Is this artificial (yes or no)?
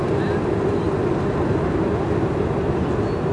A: no